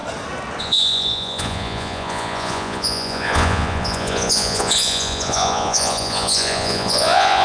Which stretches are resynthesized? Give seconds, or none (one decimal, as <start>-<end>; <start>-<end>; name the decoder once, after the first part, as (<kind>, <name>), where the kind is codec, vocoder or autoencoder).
0.6-7.4 (vocoder, Vocos)